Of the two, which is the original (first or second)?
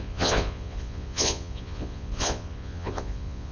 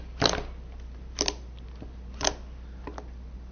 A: second